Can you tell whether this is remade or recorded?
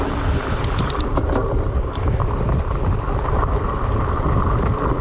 recorded